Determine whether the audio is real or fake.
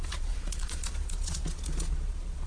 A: fake